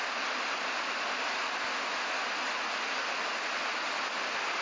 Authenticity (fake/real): real